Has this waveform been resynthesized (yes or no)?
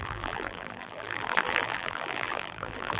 yes